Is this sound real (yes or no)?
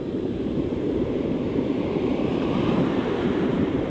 no